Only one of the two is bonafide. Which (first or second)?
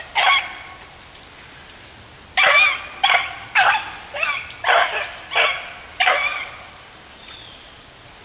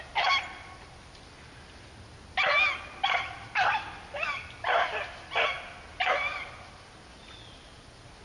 second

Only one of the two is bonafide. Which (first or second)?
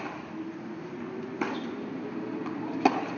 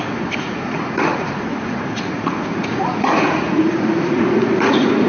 first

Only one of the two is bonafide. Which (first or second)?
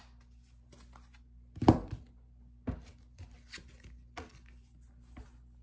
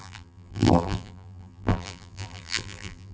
first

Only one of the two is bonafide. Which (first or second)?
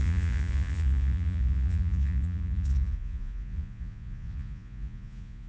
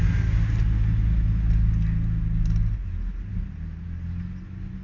second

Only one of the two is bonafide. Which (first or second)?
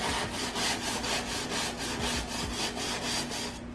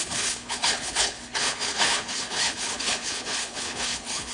first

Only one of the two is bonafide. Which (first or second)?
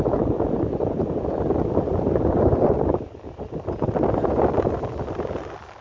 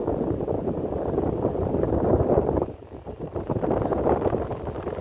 first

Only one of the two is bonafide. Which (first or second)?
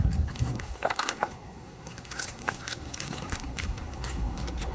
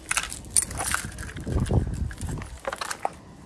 second